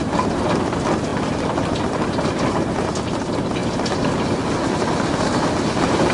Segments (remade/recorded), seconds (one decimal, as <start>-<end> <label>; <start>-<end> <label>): 0.0-6.1 recorded